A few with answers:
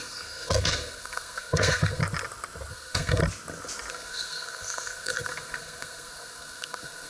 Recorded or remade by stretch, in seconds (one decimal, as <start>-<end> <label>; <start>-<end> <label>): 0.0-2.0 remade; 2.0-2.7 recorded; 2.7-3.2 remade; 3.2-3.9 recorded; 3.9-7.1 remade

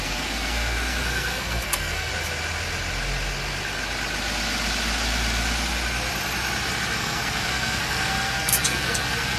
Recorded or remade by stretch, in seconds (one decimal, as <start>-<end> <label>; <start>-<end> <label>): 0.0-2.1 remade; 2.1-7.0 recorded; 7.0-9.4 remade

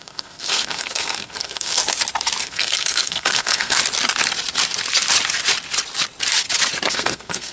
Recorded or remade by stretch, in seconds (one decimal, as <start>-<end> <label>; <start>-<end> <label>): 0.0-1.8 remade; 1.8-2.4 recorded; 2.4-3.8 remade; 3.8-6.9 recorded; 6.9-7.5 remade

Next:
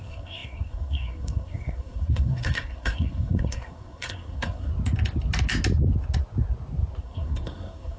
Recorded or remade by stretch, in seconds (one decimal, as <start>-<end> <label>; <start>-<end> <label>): 0.0-4.7 remade; 4.7-7.0 recorded; 7.0-8.0 remade

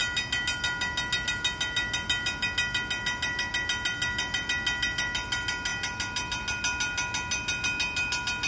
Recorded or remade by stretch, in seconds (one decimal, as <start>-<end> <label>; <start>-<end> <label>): 0.0-8.5 recorded

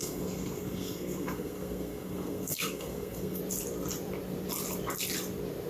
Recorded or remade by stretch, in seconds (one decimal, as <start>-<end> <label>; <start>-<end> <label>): 0.0-3.4 remade; 3.4-5.7 recorded